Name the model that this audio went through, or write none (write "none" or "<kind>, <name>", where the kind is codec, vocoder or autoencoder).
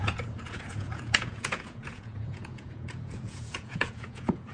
vocoder, Vocos